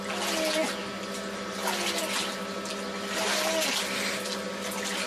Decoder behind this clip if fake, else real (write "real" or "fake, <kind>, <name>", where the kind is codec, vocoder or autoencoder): real